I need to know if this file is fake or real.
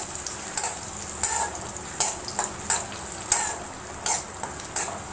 real